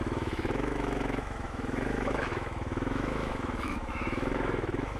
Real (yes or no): no